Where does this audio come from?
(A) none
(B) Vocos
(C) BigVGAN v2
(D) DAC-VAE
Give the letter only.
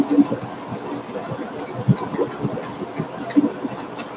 A